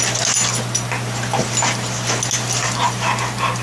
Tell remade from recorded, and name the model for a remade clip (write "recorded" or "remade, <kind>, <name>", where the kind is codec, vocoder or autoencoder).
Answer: recorded